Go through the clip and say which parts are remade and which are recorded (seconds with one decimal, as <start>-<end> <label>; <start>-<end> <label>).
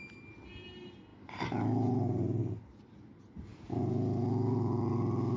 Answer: 0.0-5.4 recorded